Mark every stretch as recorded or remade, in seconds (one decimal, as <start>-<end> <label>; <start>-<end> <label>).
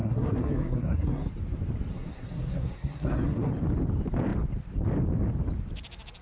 0.0-1.3 remade; 1.3-1.9 recorded; 1.9-3.5 remade; 3.5-6.2 recorded